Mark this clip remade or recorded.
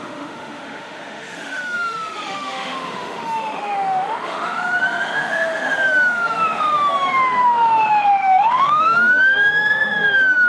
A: remade